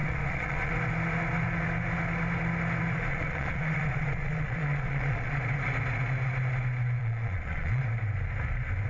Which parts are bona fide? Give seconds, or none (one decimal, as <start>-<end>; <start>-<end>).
0.7-3.1; 5.4-7.0; 7.8-8.9